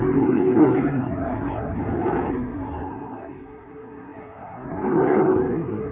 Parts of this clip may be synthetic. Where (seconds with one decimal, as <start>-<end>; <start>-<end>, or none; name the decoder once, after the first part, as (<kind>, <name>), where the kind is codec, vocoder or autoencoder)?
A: 0.0-1.8 (codec, SNAC); 2.3-5.9